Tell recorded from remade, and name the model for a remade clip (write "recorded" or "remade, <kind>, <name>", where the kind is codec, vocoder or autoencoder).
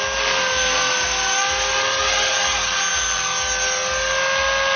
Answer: recorded